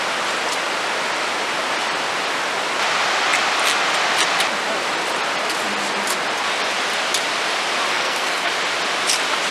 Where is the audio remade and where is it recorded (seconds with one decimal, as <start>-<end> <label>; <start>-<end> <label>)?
0.0-7.9 recorded; 7.9-8.5 remade; 8.5-9.5 recorded